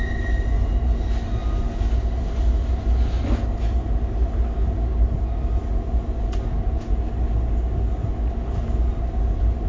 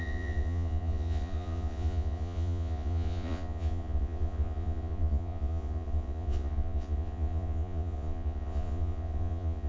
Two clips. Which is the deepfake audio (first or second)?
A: second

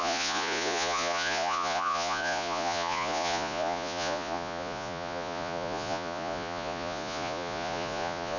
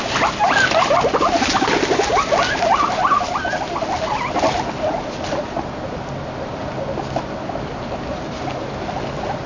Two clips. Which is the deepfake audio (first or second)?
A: first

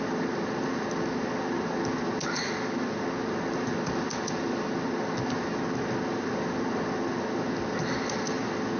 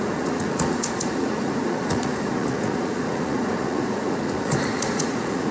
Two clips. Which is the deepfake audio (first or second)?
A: second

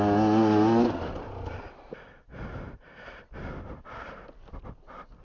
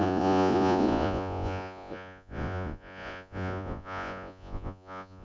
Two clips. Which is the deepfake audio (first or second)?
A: second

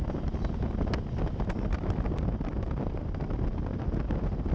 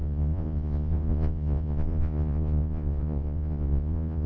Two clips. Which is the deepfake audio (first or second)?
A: second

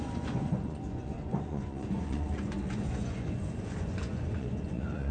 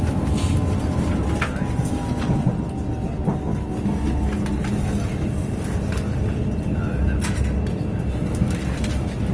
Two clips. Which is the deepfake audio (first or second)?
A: first